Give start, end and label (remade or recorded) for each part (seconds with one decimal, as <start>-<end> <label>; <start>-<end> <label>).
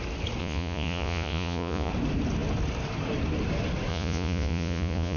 0.0-0.4 recorded; 0.4-1.9 remade; 1.9-3.9 recorded; 3.9-5.2 remade